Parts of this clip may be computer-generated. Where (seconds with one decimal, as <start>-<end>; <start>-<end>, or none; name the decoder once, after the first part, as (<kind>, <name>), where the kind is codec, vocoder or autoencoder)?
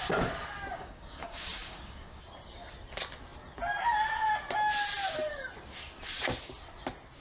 0.7-2.2 (codec, DAC)